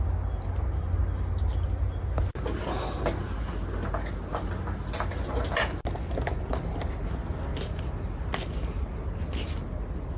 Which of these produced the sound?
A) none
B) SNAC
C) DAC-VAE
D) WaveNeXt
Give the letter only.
A